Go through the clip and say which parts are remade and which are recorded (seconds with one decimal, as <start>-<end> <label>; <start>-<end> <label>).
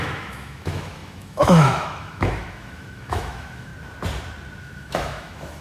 0.0-3.7 remade; 3.7-4.6 recorded; 4.6-5.6 remade